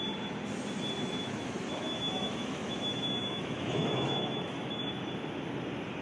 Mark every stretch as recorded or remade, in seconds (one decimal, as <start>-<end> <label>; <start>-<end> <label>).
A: 0.0-1.2 recorded; 1.2-4.8 remade; 4.8-6.0 recorded